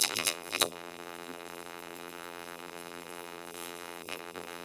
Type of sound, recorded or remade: remade